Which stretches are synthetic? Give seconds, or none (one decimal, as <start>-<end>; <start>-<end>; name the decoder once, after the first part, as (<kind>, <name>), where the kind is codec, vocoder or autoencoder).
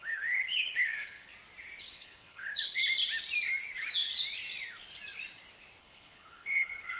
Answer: 0.0-1.3 (codec, HILCodec); 1.8-2.8; 5.8-7.0